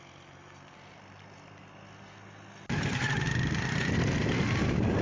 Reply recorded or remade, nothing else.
recorded